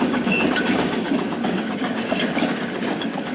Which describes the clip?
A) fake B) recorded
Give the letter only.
A